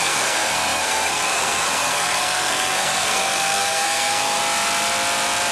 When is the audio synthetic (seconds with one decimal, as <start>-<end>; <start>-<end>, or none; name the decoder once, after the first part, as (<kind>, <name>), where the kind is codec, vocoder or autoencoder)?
0.0-4.4 (codec, SNAC)